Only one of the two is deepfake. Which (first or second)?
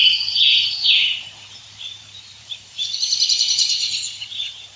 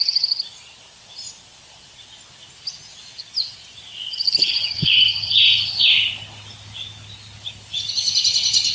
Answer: first